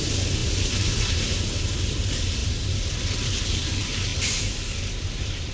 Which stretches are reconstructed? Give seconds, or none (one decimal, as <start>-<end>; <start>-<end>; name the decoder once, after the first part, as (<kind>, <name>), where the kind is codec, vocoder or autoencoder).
0.0-2.4 (vocoder, BigVGAN v2); 3.4-5.5